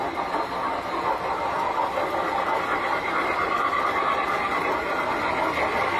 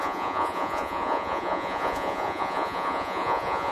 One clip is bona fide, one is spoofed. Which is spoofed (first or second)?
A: second